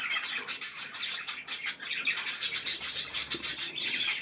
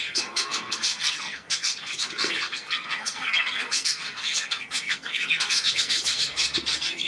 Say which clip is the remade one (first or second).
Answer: second